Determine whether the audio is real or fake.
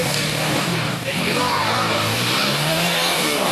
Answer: fake